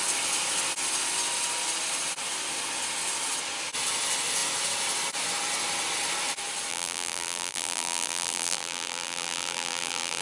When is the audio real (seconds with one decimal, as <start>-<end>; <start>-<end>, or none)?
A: 0.0-6.7